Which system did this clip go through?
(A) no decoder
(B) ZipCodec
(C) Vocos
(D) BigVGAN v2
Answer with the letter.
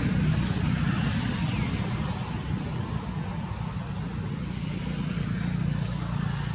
A